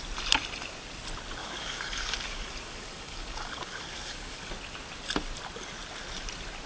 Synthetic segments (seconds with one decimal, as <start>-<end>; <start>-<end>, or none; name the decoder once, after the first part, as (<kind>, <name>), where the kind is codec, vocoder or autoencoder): 1.4-4.5 (codec, DAC)